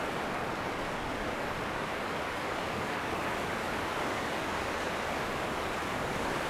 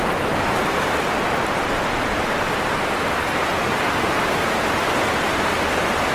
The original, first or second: second